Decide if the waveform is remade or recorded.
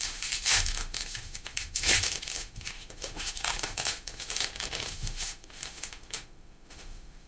remade